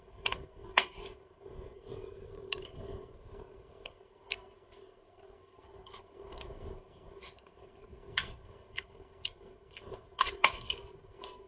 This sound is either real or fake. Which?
fake